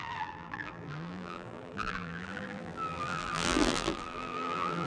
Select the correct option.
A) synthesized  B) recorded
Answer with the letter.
A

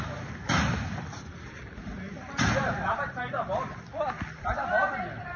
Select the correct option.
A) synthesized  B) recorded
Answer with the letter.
B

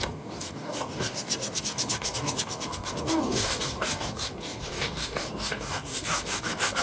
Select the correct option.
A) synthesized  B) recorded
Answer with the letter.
A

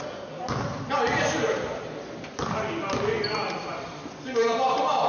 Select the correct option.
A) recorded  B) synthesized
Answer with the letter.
A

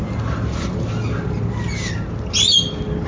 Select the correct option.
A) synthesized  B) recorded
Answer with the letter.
B